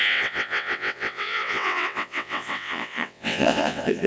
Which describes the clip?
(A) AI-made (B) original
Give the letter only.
A